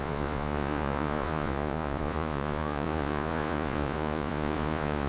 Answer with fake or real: fake